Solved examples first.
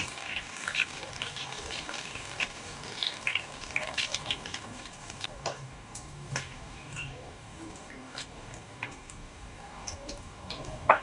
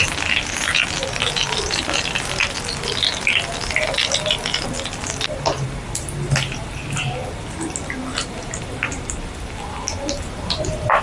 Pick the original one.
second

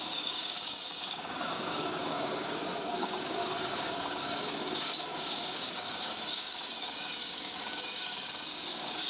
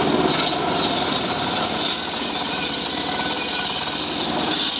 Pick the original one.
second